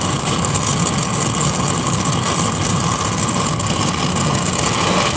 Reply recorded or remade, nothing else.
recorded